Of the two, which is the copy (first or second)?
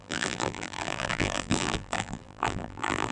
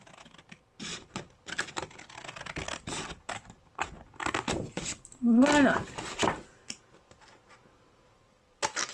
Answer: first